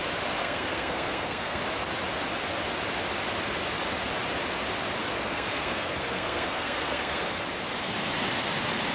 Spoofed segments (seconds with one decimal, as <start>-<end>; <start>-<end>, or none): 0.4-1.6; 5.0-7.4